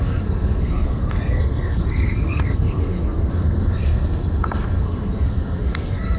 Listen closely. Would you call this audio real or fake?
fake